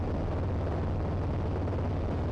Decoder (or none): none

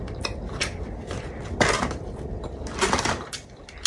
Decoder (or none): vocoder, BigVGAN v2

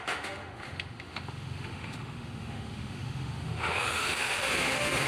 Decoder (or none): autoencoder, DAC-VAE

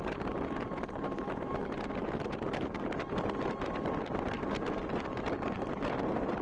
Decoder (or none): none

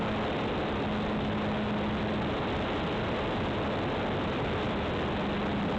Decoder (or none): none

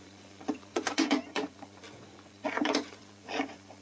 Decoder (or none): vocoder, Vocos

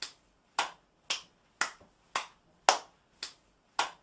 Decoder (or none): none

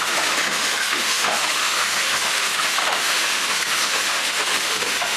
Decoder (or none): autoencoder, DAC-VAE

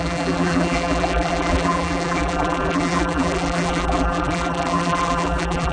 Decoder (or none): vocoder, BigVGAN v2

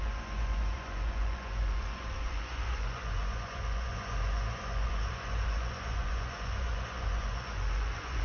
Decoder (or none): vocoder, Vocos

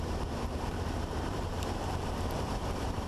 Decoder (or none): vocoder, BigVGAN v2